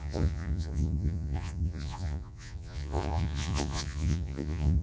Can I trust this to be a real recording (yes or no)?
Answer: no